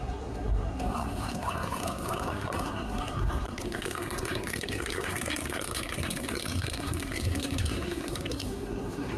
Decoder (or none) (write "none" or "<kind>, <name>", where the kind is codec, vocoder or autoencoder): codec, SNAC